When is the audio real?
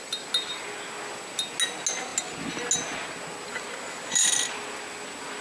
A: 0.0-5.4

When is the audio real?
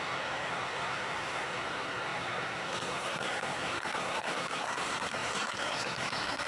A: none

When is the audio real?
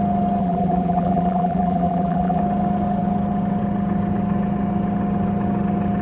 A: 0.0-0.4; 2.4-6.0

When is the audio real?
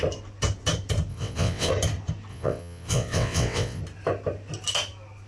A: 0.0-1.1; 1.7-2.3; 3.8-5.3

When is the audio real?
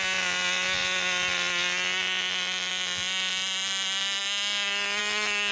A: 0.0-5.5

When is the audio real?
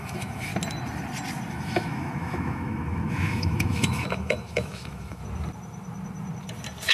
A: 0.5-1.5; 5.2-6.9